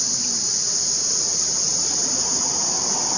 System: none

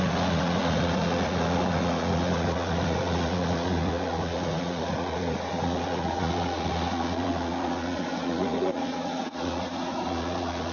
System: vocoder, Vocos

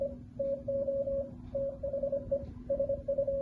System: none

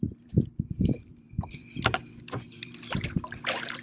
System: vocoder, BigVGAN v2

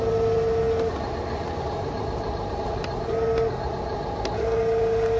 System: none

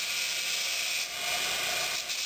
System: none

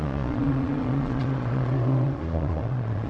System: vocoder, Vocos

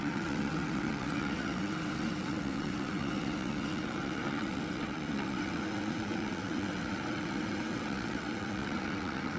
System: vocoder, WaveNeXt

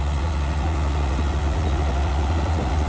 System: vocoder, Vocos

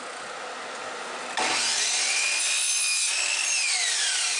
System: none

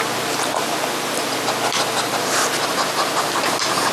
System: none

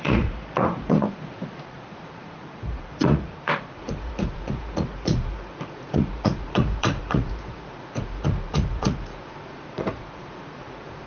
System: vocoder, Vocos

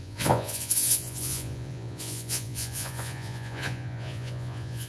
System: vocoder, Vocos